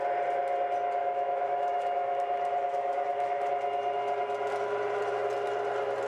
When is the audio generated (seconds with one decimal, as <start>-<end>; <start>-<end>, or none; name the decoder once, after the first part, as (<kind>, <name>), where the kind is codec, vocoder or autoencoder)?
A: 1.0-3.5 (autoencoder, DAC-VAE)